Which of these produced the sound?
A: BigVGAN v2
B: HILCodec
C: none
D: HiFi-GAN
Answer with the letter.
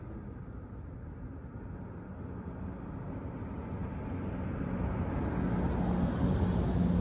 C